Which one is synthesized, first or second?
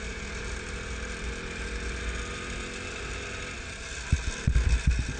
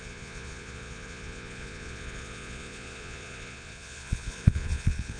second